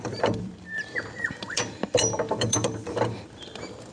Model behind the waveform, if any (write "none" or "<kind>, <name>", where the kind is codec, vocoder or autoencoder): vocoder, BigVGAN v2